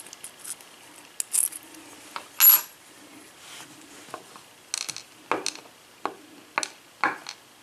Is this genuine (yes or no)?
yes